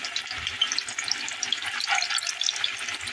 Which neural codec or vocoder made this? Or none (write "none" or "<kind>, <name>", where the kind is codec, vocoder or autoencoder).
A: none